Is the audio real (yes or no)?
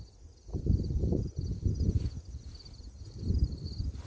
yes